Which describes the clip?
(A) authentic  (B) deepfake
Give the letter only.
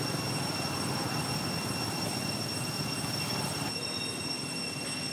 A